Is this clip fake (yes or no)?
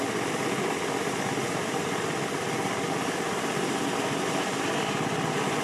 no